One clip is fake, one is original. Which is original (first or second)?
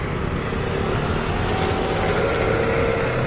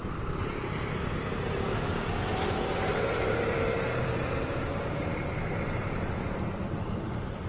first